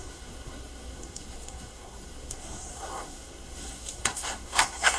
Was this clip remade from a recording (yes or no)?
yes